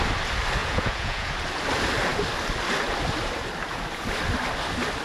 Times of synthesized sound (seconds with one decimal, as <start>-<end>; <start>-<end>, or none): 0.6-1.3